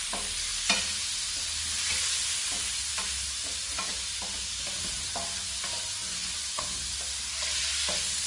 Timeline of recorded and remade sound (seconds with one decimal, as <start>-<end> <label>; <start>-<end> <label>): 0.0-6.0 recorded; 6.0-6.6 remade; 6.6-8.3 recorded